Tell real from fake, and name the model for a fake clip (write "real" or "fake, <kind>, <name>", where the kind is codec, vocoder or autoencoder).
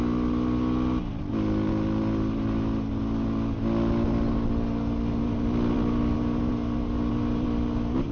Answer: real